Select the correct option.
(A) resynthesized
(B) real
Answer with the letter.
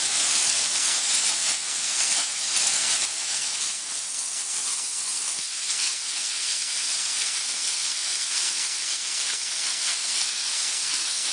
A